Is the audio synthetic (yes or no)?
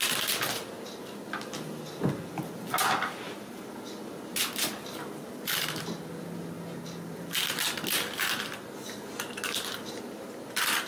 no